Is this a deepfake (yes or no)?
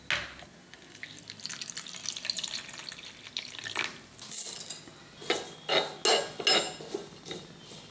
no